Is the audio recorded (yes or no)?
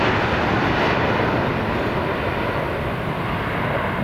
yes